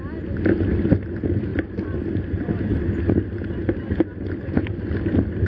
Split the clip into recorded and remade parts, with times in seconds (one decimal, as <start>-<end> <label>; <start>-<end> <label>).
0.0-1.5 recorded; 1.5-4.8 remade; 4.8-5.5 recorded